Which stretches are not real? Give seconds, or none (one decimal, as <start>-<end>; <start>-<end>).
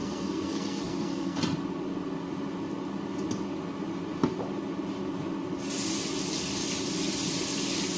0.0-1.4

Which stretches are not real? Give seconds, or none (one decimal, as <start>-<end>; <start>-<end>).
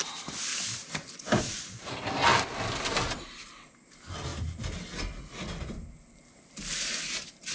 none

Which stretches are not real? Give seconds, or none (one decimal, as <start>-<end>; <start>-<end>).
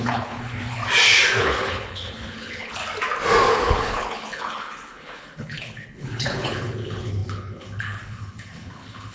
0.0-0.8; 1.4-2.8; 3.5-9.1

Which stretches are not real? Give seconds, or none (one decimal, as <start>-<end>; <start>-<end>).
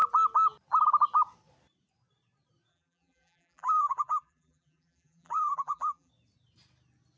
2.7-6.1